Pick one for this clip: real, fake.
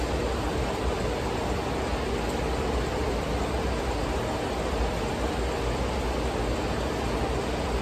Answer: real